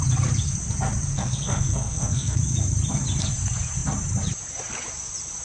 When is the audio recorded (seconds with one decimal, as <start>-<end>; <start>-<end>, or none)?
0.0-1.1; 2.4-5.4